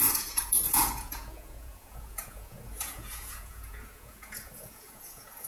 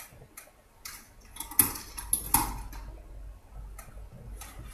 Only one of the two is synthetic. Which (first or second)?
first